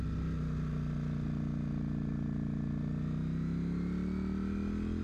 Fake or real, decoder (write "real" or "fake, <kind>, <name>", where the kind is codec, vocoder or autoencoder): real